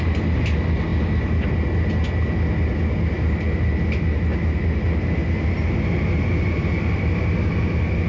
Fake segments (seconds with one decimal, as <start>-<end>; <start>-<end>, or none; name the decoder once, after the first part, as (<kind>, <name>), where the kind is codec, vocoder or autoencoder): none